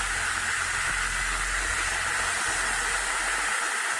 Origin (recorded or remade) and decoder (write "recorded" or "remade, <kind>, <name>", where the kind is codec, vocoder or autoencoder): recorded